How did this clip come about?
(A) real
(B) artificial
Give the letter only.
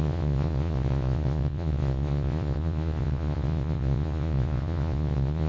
B